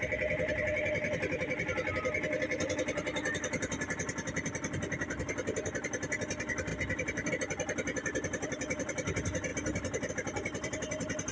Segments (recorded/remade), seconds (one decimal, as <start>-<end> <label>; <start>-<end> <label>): 0.0-11.3 recorded